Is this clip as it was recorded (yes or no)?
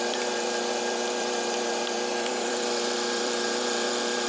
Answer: no